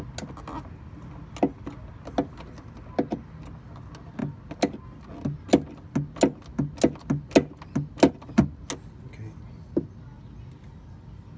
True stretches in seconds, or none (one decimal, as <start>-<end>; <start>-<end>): 0.0-11.4